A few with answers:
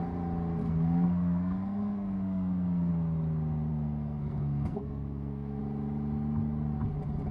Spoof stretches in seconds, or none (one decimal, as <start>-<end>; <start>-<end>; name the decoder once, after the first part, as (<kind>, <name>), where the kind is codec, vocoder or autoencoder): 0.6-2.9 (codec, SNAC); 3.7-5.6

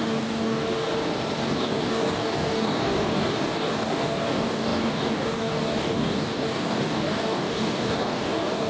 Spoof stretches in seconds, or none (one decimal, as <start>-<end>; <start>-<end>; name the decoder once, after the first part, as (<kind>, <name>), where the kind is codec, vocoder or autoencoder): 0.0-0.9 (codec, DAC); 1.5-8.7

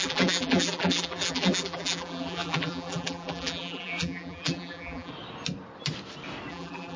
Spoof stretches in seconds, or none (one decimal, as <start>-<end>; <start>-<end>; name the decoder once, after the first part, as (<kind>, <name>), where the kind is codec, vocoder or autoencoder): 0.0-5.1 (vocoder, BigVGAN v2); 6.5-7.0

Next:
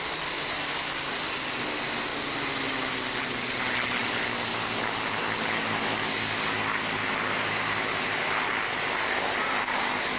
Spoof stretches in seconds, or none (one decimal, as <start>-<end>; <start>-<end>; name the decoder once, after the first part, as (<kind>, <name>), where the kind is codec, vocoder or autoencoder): none

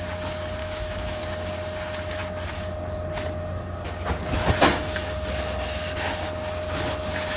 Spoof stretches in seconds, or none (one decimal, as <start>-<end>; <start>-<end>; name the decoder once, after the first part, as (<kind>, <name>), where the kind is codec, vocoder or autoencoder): 0.6-1.2 (autoencoder, DAC-VAE)